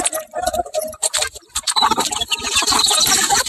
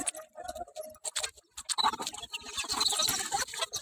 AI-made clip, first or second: first